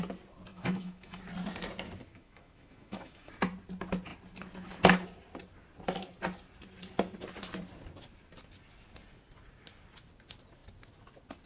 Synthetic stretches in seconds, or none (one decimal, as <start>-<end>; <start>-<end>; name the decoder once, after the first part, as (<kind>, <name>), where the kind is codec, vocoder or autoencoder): 0.5-1.2 (autoencoder, DAC-VAE); 2.1-3.3